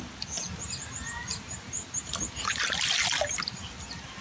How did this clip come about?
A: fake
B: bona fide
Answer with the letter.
B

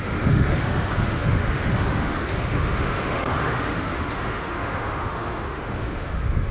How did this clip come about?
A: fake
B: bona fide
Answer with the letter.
A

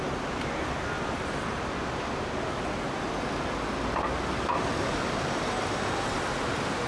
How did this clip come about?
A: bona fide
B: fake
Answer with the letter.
A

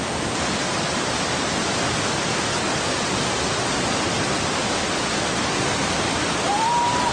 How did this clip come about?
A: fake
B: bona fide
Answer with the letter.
B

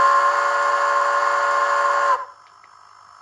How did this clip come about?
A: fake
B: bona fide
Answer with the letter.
B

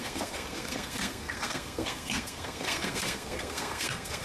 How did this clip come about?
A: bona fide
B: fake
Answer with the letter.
B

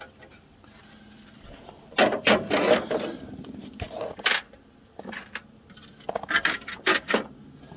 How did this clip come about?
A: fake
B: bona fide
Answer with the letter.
B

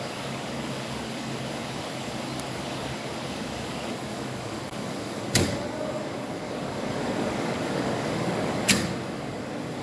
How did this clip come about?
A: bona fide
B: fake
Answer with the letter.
B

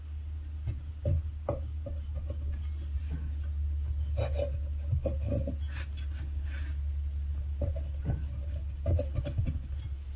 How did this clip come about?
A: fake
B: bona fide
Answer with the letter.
B